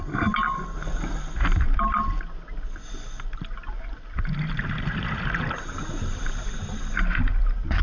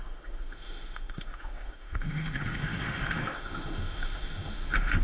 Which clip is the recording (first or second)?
first